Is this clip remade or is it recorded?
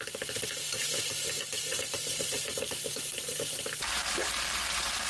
remade